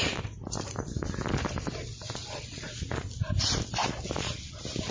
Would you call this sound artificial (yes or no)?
no